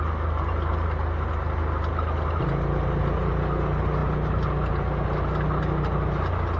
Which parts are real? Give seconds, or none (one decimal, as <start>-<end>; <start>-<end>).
0.0-6.6